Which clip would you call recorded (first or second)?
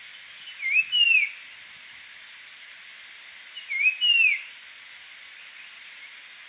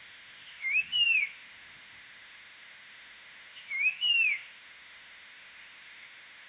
first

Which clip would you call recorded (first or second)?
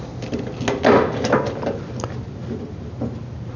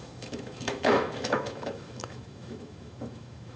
first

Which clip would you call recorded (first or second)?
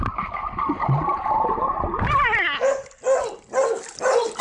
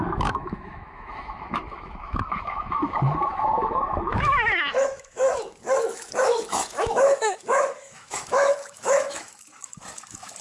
first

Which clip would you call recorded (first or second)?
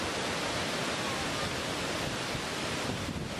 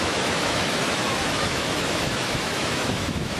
first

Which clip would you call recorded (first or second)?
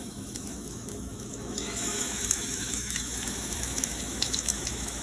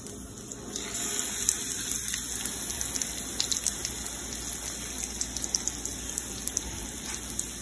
second